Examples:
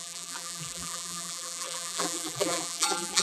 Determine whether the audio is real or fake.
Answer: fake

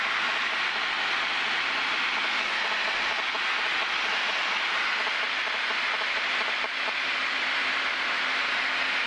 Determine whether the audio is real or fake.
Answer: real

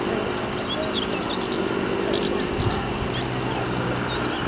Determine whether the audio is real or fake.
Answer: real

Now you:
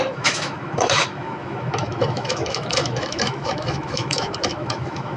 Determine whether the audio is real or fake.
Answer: fake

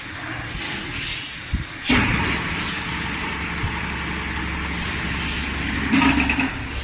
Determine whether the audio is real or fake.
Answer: real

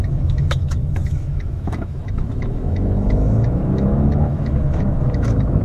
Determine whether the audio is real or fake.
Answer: fake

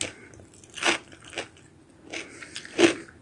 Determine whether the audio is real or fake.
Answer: real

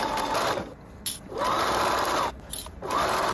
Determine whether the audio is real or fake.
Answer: real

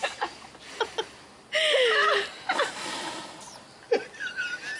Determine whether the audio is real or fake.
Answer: real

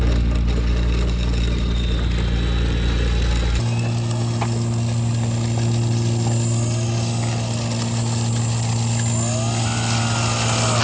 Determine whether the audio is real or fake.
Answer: real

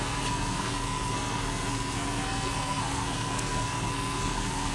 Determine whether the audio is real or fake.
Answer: fake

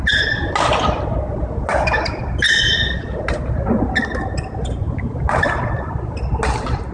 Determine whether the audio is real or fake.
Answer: real